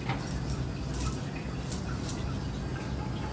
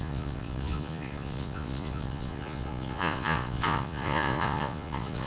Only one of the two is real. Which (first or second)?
first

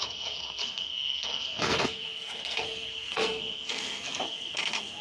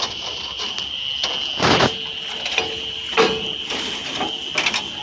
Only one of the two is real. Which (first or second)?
second